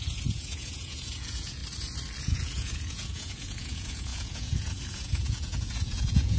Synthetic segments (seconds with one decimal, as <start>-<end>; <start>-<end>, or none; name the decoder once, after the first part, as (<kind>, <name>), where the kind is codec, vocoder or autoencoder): 0.0-1.6 (vocoder, Vocos); 2.2-6.4